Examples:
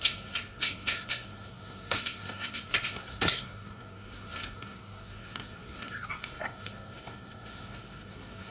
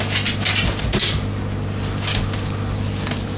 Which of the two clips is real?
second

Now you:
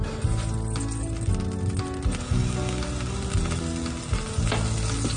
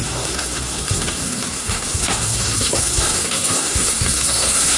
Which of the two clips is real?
first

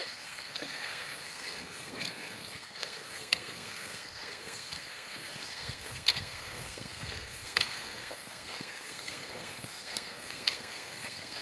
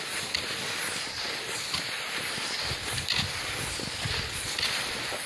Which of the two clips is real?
second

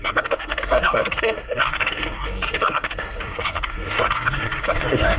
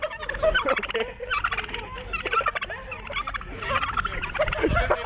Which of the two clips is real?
second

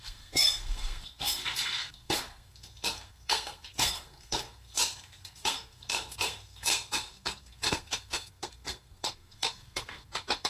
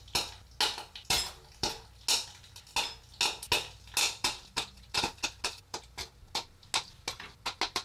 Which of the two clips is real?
second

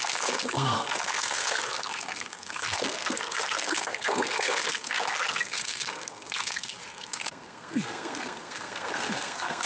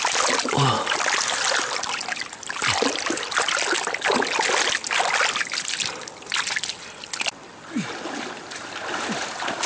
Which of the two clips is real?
second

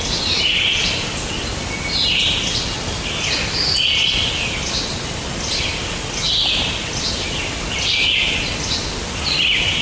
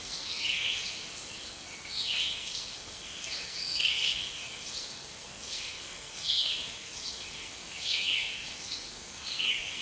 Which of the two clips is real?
first